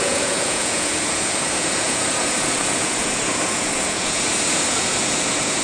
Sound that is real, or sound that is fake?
fake